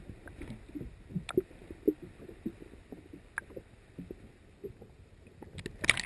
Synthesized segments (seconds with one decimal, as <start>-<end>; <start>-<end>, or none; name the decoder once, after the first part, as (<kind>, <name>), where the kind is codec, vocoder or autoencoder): none